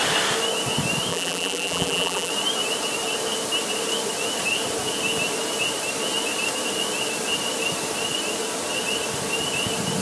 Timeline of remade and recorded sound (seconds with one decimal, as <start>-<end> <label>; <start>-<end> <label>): 0.0-1.1 recorded; 1.1-2.3 remade; 2.3-10.0 recorded

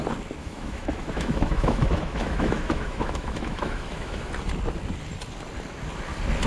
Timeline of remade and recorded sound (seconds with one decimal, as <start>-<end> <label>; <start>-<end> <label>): 0.0-0.4 recorded; 0.4-4.3 remade; 4.3-6.5 recorded